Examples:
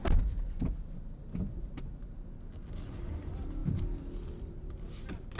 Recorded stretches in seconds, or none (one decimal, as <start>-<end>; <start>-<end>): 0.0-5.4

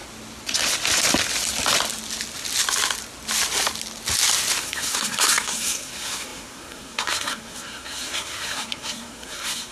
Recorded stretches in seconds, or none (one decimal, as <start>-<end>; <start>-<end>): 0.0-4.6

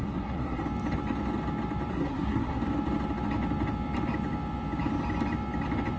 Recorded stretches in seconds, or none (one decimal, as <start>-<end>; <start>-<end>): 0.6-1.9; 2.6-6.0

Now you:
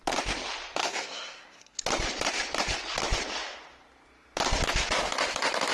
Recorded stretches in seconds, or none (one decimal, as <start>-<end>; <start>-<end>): 0.0-0.8; 1.8-5.7

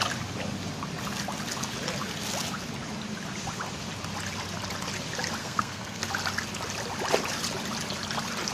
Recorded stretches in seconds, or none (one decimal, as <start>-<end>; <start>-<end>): 0.0-5.4; 6.0-8.5

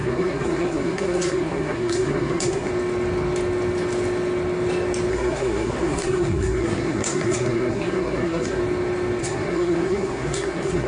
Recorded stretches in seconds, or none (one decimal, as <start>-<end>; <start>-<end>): 2.7-5.1; 8.6-9.2

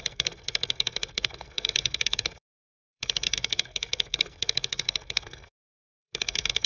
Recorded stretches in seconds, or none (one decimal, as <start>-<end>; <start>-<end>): none